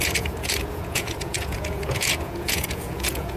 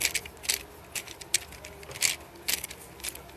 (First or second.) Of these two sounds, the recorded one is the second